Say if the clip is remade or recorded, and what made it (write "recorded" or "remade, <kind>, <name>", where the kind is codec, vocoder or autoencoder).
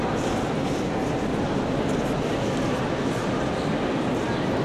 recorded